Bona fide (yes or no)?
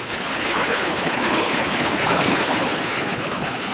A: no